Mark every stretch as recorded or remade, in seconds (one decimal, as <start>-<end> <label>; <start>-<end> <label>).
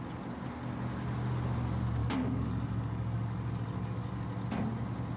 0.0-2.0 recorded; 2.0-4.2 remade; 4.2-5.2 recorded